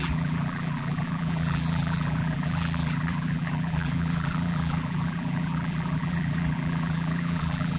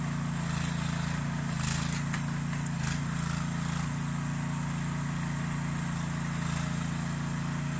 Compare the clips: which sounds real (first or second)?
second